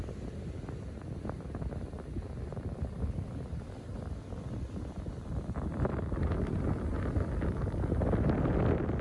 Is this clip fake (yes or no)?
no